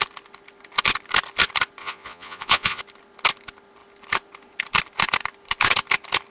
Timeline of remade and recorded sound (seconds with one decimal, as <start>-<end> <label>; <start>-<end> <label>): 0.0-1.8 recorded; 1.8-2.8 remade; 2.8-6.3 recorded

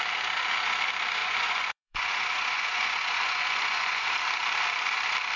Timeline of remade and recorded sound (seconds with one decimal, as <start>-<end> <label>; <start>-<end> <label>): 0.0-1.2 recorded; 1.2-4.1 remade; 4.1-5.4 recorded